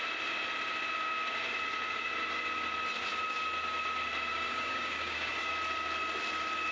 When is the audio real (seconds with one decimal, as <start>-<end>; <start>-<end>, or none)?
0.0-4.3; 5.5-6.7